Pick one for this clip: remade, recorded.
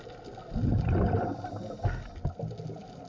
recorded